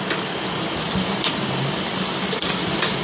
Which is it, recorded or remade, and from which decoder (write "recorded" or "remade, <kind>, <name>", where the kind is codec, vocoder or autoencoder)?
recorded